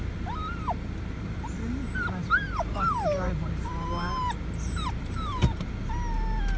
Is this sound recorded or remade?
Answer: recorded